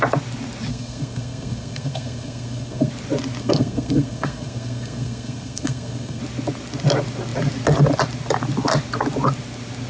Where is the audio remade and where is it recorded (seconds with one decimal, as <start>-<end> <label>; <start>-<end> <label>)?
0.0-0.7 recorded; 0.7-2.9 remade; 2.9-3.4 recorded; 3.4-6.2 remade; 6.2-9.9 recorded